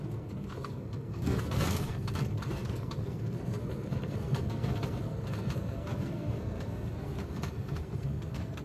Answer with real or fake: fake